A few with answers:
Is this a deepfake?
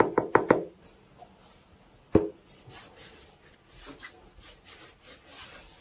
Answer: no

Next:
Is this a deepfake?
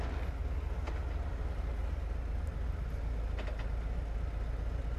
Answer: no